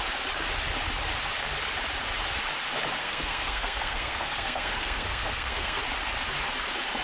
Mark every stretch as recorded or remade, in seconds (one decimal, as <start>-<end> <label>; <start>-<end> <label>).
0.0-3.0 recorded; 3.0-5.8 remade; 5.8-7.0 recorded